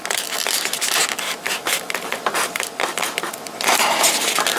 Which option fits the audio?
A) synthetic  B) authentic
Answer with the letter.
B